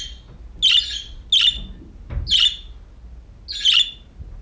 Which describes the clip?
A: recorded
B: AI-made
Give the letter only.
A